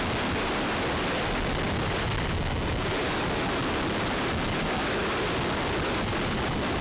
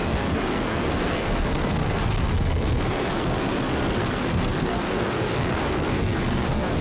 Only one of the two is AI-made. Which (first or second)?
second